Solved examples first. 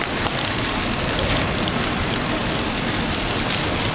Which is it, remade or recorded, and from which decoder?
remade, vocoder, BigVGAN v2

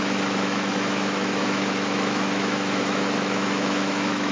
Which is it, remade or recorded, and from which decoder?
remade, autoencoder, DAC-VAE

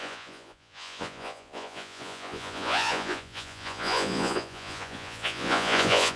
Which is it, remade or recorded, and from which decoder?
remade, vocoder, Vocos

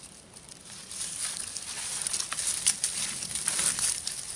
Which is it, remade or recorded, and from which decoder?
recorded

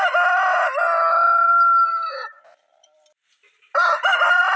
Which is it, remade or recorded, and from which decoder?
recorded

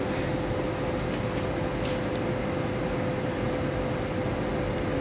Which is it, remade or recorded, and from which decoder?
recorded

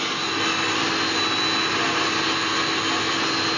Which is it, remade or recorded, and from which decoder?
recorded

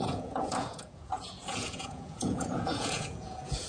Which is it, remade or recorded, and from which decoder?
remade, vocoder, Vocos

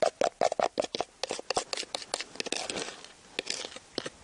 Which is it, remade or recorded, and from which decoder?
recorded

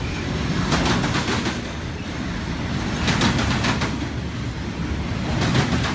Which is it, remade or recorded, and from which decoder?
recorded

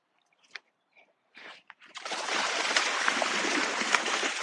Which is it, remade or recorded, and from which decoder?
remade, vocoder, BigVGAN v2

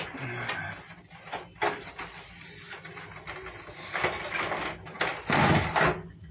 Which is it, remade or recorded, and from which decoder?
recorded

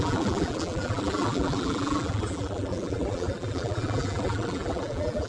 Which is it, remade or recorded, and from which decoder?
remade, vocoder, BigVGAN v2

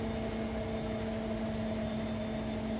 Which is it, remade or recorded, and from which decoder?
recorded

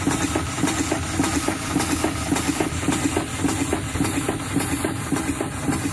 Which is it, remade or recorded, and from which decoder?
recorded